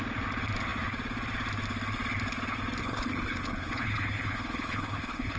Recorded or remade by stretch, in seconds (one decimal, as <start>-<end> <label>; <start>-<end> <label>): 0.0-2.8 recorded; 2.8-5.4 remade